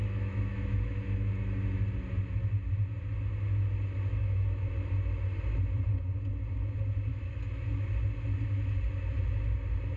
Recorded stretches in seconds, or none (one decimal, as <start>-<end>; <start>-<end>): 1.3-4.2; 4.7-7.1; 7.7-10.0